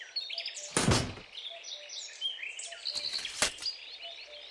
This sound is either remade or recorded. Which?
recorded